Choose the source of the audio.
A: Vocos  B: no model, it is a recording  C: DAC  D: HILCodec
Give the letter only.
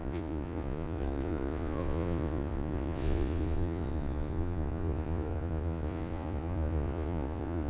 A